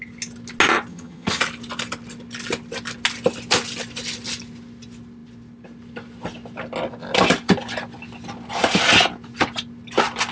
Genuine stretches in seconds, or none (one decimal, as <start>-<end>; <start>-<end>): 0.0-0.9; 1.4-10.3